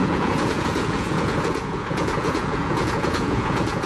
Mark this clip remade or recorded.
remade